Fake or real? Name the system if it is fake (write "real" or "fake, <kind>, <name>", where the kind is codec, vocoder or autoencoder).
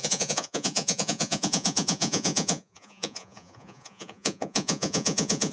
fake, vocoder, Vocos